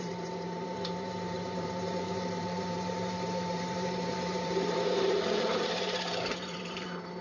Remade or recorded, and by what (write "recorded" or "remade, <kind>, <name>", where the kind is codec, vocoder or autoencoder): remade, vocoder, BigVGAN v2